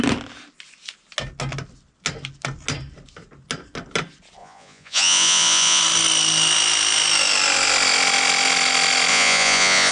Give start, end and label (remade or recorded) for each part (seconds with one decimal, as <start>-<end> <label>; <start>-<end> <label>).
0.0-4.4 recorded; 4.4-5.8 remade; 5.8-9.1 recorded; 9.1-9.9 remade